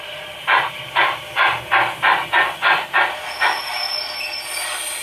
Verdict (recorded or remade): remade